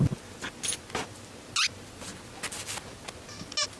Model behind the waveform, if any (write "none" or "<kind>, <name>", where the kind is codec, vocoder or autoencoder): none